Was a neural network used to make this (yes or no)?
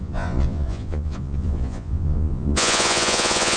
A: yes